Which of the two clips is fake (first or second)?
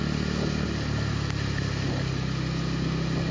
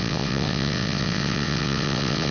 second